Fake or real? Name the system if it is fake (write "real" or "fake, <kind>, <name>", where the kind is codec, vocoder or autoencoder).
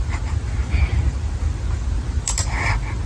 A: real